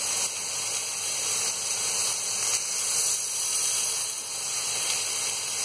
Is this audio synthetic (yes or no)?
no